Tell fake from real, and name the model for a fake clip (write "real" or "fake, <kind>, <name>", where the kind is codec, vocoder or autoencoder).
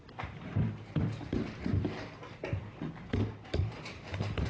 fake, vocoder, BigVGAN v2